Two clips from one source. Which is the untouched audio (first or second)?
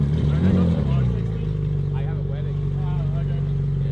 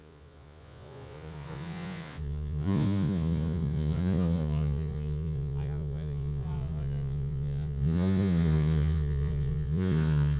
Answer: first